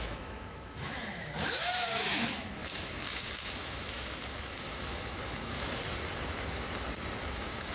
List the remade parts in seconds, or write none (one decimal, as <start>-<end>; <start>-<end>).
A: 0.0-5.8; 7.2-7.7